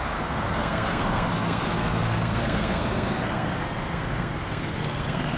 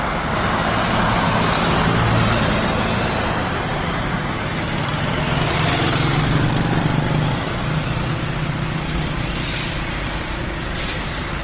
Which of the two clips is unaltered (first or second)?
second